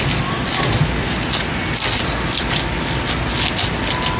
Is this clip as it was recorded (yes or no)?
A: yes